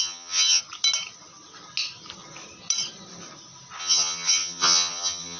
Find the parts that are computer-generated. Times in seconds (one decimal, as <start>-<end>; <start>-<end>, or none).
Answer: 0.0-0.6; 3.8-5.4